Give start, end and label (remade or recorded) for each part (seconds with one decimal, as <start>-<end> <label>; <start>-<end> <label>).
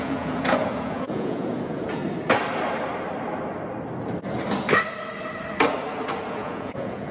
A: 0.0-2.0 remade; 2.0-6.3 recorded; 6.3-7.1 remade